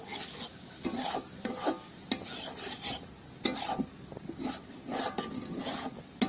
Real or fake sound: real